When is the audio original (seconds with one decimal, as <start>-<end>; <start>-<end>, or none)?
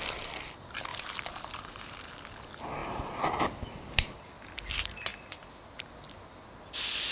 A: 0.0-0.9; 2.1-7.1